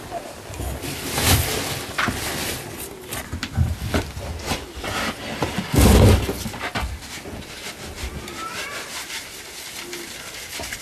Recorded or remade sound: recorded